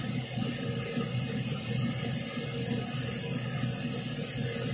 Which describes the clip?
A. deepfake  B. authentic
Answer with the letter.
B